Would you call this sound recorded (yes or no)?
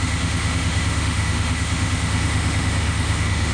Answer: no